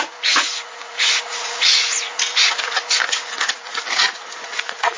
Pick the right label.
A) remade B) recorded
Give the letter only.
A